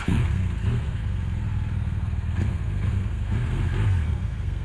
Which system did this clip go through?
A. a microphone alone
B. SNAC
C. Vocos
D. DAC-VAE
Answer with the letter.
B